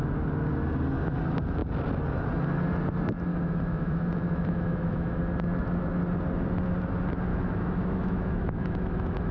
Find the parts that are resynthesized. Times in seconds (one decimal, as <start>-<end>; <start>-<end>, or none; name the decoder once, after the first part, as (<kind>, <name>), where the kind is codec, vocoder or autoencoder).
3.3-5.2 (autoencoder, DAC-VAE); 7.3-9.3